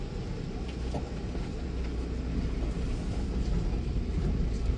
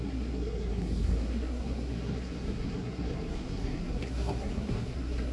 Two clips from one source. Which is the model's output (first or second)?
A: second